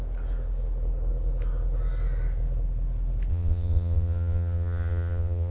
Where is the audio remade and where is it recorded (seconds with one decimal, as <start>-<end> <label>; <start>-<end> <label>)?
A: 0.0-3.3 recorded; 3.3-5.5 remade